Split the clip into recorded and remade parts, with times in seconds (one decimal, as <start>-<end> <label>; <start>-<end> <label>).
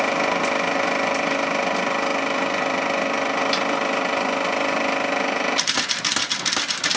0.0-7.0 recorded